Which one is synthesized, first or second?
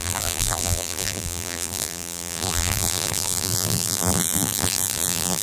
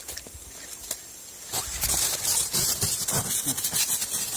first